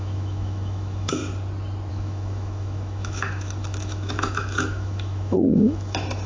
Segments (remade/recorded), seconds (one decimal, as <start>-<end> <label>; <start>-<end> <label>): 0.0-1.2 remade; 1.2-1.9 recorded; 1.9-6.3 remade